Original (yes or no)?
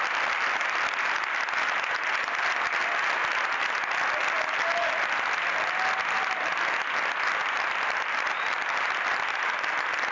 yes